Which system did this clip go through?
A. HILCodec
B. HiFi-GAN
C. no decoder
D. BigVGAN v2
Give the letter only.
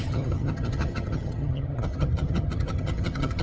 B